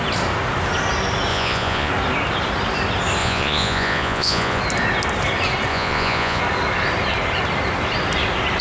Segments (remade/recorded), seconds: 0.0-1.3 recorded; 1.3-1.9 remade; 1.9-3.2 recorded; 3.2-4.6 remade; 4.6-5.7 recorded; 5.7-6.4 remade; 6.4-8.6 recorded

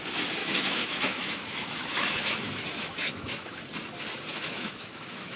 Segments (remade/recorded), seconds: 0.0-0.4 recorded; 0.4-3.6 remade; 3.6-4.3 recorded; 4.3-5.4 remade

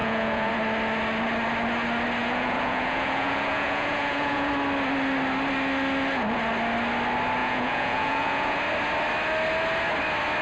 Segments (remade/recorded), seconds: 0.0-0.5 remade; 0.5-2.2 recorded; 2.2-4.5 remade; 4.5-7.4 recorded; 7.4-8.6 remade; 8.6-10.4 recorded

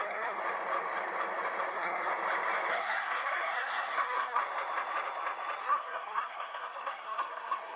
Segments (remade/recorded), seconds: 0.0-0.4 remade; 0.4-1.7 recorded; 1.7-2.1 remade; 2.1-2.7 recorded; 2.7-4.4 remade; 4.4-5.6 recorded; 5.6-7.8 remade